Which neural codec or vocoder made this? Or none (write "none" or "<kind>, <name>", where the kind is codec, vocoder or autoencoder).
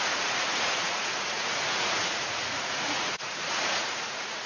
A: vocoder, Vocos